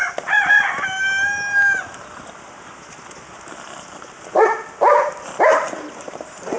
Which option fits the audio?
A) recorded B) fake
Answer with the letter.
A